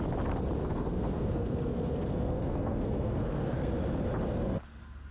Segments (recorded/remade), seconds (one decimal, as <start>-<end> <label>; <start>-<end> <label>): 0.0-0.6 recorded; 0.6-3.7 remade; 3.7-5.1 recorded

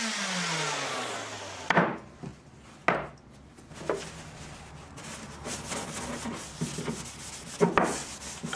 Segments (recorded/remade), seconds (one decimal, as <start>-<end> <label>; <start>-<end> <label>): 0.0-8.6 recorded

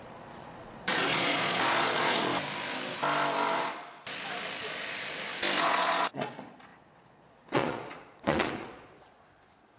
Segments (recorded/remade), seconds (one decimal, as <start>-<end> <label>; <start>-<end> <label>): 0.0-2.3 remade; 2.3-5.6 recorded; 5.6-9.8 remade

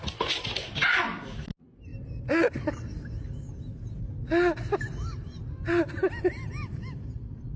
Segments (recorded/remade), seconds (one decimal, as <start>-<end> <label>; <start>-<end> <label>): 0.0-7.6 recorded

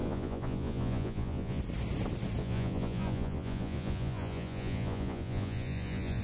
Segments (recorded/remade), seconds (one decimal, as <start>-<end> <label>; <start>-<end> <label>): 0.0-1.6 remade; 1.6-2.4 recorded; 2.4-6.2 remade